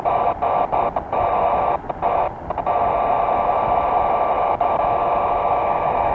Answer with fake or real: real